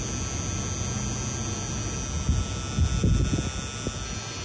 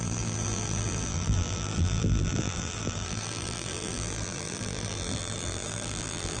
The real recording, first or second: first